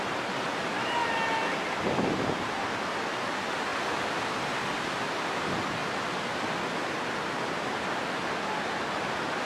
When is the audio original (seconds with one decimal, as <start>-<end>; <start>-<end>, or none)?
0.0-9.5